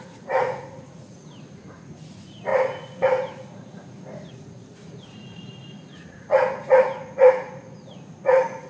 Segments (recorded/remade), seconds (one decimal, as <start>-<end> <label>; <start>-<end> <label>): 0.0-8.7 remade